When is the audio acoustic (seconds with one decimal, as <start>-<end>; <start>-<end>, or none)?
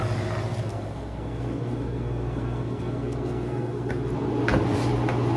0.0-0.7; 3.9-5.4